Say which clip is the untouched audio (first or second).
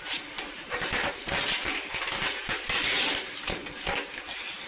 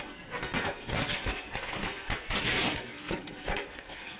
first